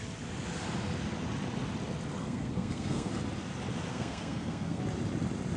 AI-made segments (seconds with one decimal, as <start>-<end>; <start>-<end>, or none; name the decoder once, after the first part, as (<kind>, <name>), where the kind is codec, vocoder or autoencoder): 2.2-3.1 (codec, SNAC); 3.9-4.8